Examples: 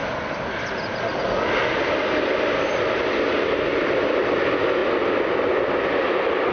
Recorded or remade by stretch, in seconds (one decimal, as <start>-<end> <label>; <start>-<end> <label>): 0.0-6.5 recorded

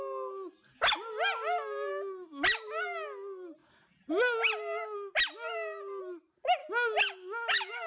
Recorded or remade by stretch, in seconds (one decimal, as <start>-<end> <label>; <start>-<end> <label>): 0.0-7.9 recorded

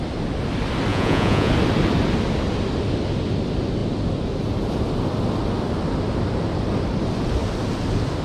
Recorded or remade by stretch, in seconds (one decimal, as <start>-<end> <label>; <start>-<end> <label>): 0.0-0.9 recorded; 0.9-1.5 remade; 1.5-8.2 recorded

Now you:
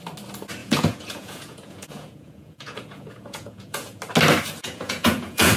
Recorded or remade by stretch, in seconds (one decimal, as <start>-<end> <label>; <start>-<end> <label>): 0.0-0.6 recorded; 0.6-4.0 remade; 4.0-4.6 recorded; 4.6-5.6 remade

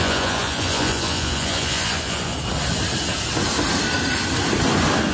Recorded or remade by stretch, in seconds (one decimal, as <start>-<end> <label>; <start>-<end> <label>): 0.0-2.3 remade; 2.3-5.1 recorded

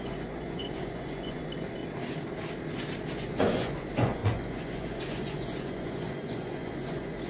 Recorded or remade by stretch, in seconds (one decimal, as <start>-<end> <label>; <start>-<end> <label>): 0.0-1.8 remade; 1.8-3.1 recorded; 3.1-7.3 remade